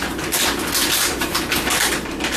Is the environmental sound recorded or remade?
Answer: recorded